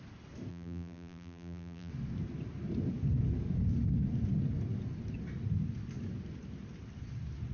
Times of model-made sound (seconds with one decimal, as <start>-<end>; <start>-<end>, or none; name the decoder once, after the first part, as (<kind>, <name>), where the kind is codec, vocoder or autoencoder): 0.5-1.9 (vocoder, BigVGAN v2)